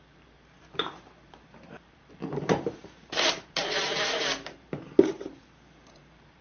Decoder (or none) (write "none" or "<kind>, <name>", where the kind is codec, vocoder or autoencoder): vocoder, BigVGAN v2